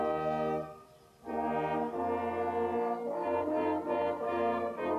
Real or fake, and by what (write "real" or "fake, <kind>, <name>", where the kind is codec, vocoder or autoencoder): real